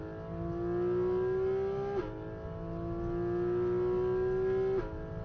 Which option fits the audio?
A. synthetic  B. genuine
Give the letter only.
B